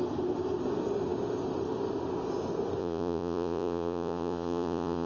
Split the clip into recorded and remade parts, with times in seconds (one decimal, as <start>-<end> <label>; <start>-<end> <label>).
0.0-2.8 recorded; 2.8-5.1 remade